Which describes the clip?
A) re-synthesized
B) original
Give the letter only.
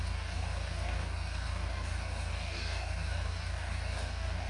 A